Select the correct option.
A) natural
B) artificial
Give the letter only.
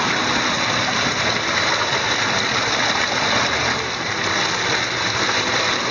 A